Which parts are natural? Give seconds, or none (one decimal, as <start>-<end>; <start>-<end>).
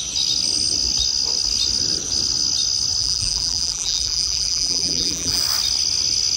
0.0-3.0; 5.4-6.4